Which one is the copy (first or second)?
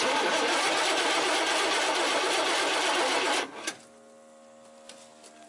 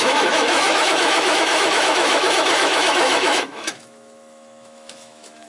second